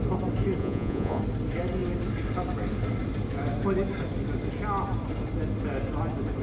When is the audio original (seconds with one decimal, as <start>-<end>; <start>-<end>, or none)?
0.0-0.6; 1.2-6.4